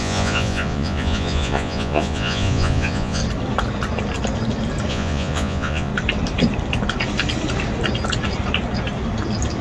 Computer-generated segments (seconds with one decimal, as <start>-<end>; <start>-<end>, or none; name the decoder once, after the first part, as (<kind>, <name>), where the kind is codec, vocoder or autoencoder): 0.0-3.2 (vocoder, Vocos); 4.9-5.9